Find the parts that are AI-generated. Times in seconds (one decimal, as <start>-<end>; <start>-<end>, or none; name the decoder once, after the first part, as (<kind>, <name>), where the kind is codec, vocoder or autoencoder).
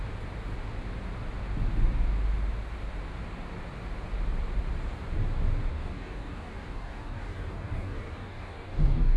5.7-9.2 (codec, DAC)